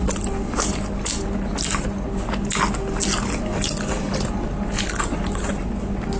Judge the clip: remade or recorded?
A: recorded